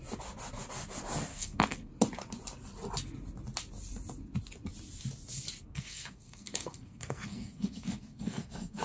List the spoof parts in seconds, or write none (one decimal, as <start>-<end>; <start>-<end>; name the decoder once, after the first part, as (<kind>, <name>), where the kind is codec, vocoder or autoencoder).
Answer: 1.3-1.9 (codec, SNAC); 5.6-8.8